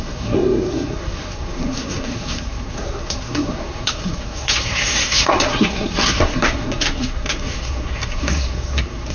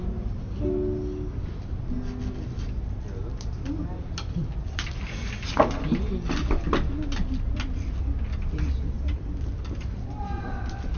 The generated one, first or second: first